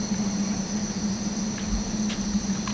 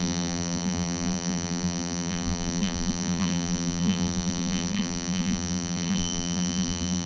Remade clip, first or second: second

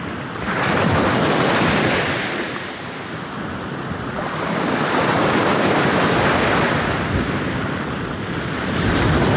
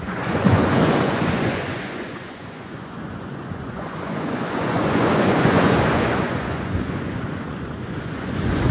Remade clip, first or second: second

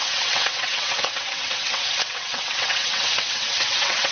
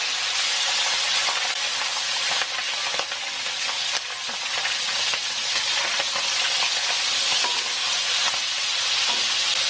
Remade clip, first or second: first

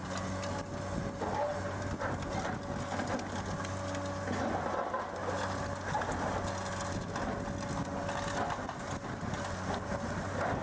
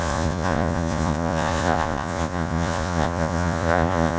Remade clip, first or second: second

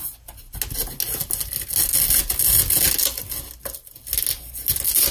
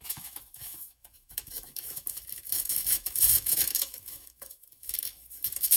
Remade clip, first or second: second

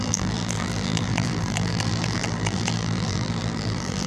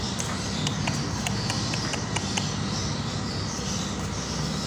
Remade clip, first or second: first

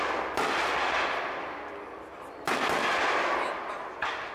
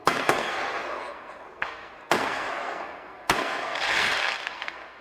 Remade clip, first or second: second